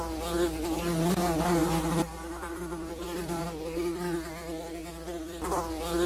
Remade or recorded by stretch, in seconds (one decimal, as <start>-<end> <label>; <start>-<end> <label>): 0.0-1.6 recorded; 1.6-4.3 remade; 4.3-4.8 recorded; 4.8-5.6 remade; 5.6-6.1 recorded